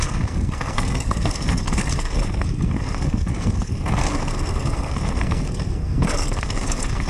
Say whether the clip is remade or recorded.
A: remade